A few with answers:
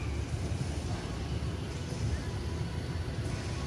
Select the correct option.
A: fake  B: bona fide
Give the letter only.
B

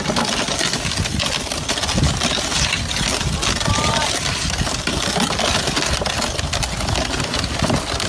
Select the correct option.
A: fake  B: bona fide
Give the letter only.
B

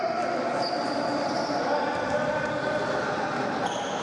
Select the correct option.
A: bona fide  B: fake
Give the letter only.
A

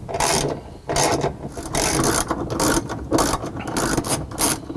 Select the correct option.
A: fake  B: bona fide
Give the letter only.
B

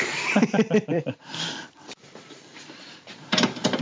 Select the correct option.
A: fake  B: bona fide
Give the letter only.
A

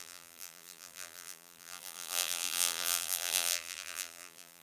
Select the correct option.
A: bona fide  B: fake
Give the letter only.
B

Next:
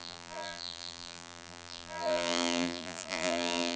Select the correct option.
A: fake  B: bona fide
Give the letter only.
A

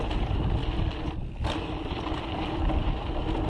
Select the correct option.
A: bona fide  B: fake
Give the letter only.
A